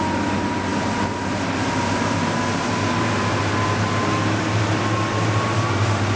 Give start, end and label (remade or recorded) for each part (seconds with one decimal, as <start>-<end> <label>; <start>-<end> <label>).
0.0-6.2 recorded